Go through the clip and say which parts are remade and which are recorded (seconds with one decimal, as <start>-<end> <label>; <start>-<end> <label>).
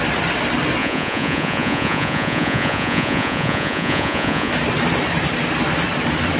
0.0-0.8 recorded; 0.8-4.5 remade; 4.5-6.4 recorded